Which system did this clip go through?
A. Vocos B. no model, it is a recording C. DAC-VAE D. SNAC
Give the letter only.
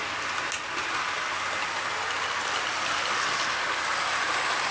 B